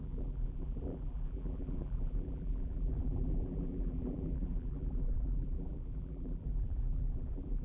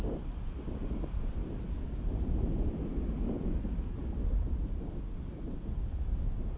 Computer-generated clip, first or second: first